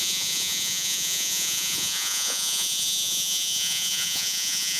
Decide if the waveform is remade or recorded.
remade